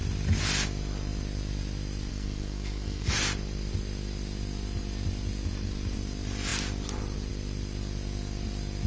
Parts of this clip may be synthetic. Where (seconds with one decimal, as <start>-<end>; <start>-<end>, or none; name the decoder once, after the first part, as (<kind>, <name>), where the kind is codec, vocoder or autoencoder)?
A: 2.1-3.1 (codec, SNAC)